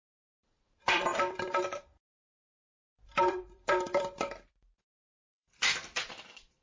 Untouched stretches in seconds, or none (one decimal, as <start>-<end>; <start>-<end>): none

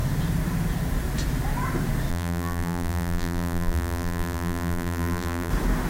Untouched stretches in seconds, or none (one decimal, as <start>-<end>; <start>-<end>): 0.0-2.1; 5.5-5.9

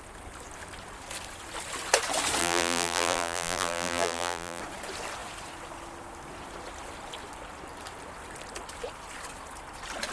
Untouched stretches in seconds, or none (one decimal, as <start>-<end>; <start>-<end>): 0.0-2.4; 4.6-10.1